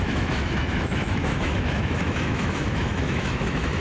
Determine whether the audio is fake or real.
fake